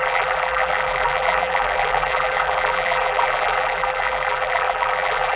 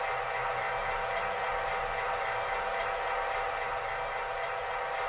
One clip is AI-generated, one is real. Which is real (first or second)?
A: second